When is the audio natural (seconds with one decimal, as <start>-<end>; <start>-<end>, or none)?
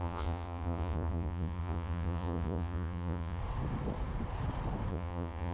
3.4-4.9